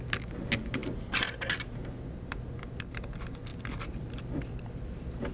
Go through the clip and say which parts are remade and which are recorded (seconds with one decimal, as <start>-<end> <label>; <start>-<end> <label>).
0.0-5.3 recorded